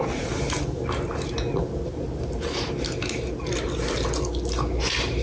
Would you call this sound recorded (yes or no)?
yes